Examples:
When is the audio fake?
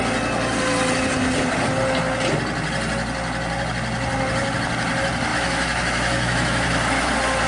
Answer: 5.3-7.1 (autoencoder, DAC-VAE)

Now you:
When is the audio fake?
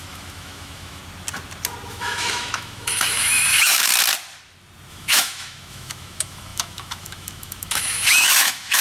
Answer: 0.0-1.0 (autoencoder, DAC-VAE); 1.9-3.9; 4.9-8.8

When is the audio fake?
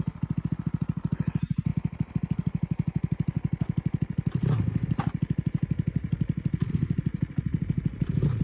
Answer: none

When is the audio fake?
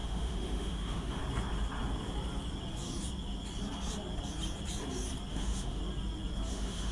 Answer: 0.0-1.2 (autoencoder, DAC-VAE); 5.3-5.8; 6.5-6.9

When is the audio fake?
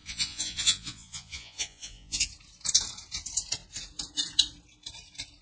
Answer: 0.0-2.2 (vocoder, Vocos)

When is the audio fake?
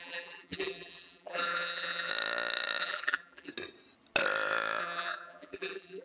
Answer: 0.0-2.1 (vocoder, BigVGAN v2); 2.8-3.5; 4.8-6.0